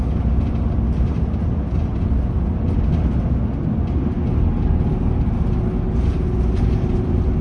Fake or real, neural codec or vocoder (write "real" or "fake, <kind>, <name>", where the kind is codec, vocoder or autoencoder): real